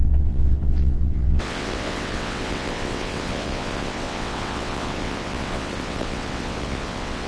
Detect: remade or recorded remade